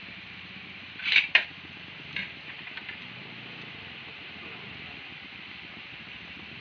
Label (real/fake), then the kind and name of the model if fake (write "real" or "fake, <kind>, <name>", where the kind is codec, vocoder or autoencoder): fake, vocoder, BigVGAN v2